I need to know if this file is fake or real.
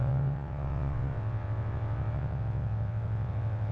fake